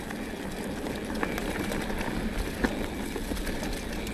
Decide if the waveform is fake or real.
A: real